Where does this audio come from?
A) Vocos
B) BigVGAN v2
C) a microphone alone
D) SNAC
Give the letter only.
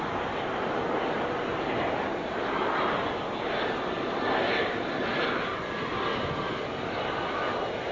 C